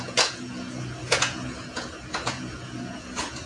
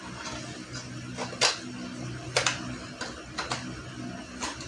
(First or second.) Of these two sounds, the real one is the second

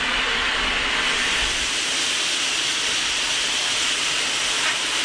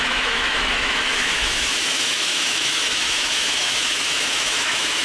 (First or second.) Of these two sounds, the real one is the first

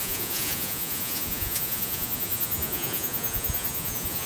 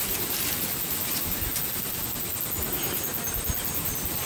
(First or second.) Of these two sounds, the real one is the second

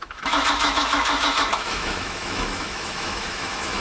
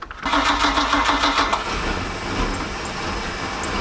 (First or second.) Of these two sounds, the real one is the second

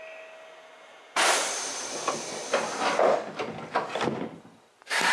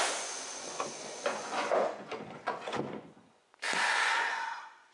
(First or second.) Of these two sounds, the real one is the first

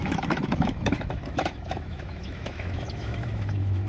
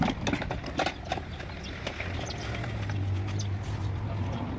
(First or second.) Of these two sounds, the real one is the second